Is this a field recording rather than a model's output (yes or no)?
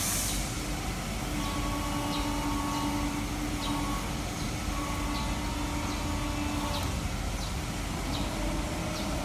yes